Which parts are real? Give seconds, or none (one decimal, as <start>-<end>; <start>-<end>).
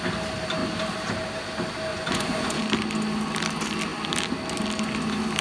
0.0-1.9; 2.6-5.4